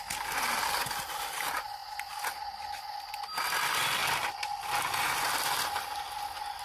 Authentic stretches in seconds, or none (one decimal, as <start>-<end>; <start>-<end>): 0.0-6.6